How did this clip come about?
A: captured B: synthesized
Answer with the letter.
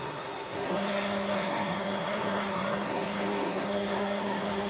B